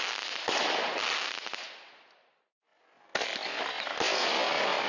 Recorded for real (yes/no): yes